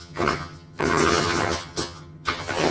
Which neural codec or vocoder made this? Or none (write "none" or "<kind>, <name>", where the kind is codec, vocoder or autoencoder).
vocoder, HiFi-GAN